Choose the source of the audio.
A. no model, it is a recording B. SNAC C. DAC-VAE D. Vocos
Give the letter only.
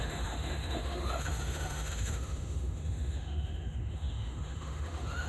C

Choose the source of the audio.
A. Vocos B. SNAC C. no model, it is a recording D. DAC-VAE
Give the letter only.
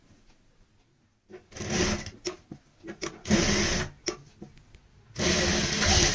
C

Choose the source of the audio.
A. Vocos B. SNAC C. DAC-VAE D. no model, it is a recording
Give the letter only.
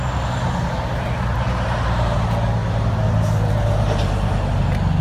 D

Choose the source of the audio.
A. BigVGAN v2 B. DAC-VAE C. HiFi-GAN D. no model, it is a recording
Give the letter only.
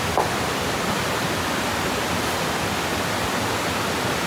D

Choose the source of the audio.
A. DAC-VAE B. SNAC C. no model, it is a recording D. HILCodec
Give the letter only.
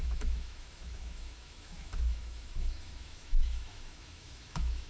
A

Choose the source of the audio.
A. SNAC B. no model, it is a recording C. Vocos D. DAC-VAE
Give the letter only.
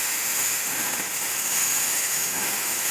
D